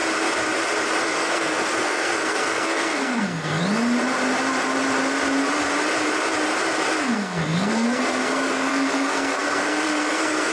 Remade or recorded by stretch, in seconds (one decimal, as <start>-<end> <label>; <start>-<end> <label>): 0.0-1.0 recorded; 1.0-3.6 remade; 3.6-7.0 recorded; 7.0-10.5 remade